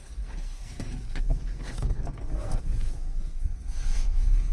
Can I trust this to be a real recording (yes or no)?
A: no